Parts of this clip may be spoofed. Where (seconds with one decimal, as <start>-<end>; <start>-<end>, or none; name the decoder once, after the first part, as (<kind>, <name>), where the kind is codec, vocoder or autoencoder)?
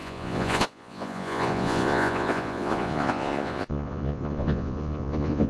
0.0-5.5 (vocoder, Vocos)